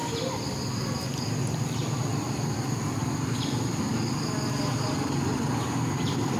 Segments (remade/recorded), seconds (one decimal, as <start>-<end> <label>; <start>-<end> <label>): 0.0-6.4 recorded